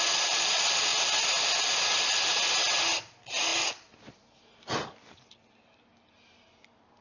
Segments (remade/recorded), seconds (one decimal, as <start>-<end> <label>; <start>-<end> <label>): 0.0-7.0 recorded